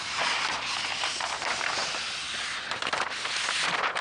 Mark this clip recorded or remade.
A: recorded